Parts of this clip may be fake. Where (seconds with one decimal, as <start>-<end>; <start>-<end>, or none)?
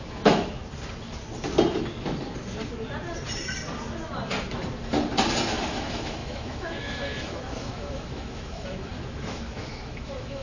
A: 0.0-0.6; 5.6-10.4